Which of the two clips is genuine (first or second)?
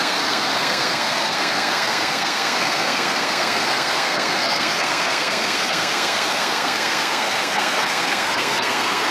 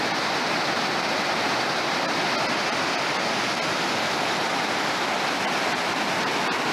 second